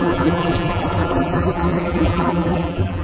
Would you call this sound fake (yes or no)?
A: yes